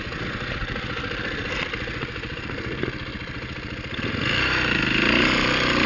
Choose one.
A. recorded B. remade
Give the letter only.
B